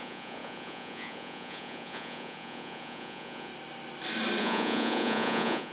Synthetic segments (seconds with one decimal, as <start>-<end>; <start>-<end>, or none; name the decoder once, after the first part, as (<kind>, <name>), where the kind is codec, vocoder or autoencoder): 0.0-3.5 (vocoder, Vocos); 4.4-5.7

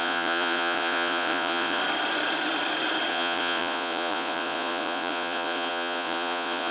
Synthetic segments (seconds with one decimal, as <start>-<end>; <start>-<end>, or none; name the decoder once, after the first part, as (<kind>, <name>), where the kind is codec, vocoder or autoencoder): 0.0-1.8 (vocoder, Vocos); 3.1-6.7